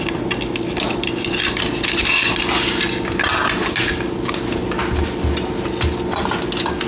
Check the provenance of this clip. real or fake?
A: real